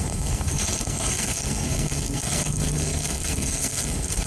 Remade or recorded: remade